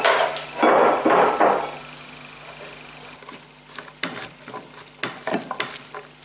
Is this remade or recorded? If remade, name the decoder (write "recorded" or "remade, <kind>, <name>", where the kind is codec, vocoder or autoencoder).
recorded